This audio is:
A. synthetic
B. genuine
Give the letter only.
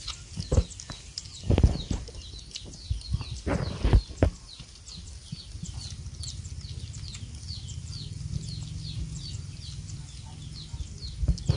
B